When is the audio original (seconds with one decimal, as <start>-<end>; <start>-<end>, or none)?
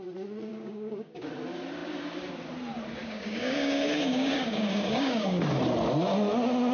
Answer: 0.0-0.5; 1.3-3.0; 5.4-6.7